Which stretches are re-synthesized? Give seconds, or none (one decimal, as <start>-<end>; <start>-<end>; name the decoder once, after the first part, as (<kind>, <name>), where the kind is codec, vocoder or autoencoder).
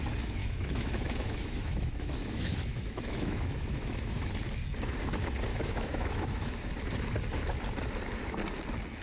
0.4-4.3 (autoencoder, DAC-VAE); 5.5-6.7